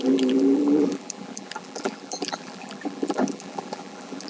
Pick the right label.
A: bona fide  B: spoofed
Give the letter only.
B